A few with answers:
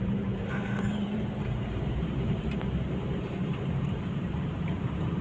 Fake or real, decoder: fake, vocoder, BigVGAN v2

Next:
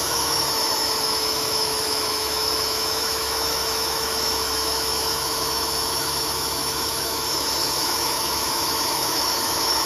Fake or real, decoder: fake, autoencoder, DAC-VAE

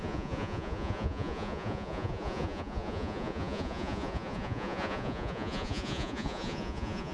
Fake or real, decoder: fake, vocoder, Vocos